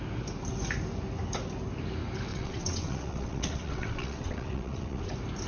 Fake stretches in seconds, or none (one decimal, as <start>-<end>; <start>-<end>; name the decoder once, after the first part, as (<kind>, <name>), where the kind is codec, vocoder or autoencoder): 2.3-5.1 (vocoder, WaveNeXt)